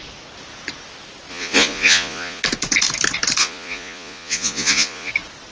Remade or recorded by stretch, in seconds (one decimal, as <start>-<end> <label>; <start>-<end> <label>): 0.0-1.3 recorded; 1.3-2.4 remade; 2.4-3.4 recorded; 3.4-5.1 remade; 5.1-5.5 recorded